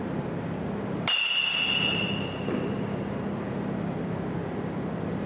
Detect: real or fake real